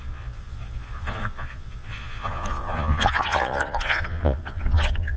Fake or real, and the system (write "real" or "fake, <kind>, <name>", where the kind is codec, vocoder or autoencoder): fake, vocoder, Vocos